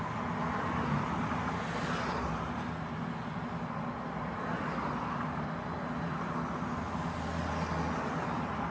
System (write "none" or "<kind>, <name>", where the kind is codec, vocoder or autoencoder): none